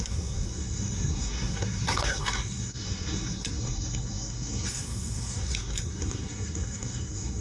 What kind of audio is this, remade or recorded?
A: remade